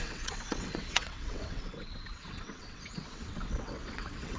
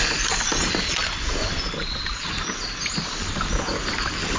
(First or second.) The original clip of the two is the second